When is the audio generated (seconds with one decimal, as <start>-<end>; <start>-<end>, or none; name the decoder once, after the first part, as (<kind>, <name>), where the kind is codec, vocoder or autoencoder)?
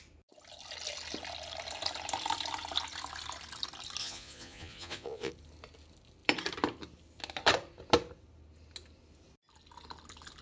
4.0-5.3 (vocoder, Vocos)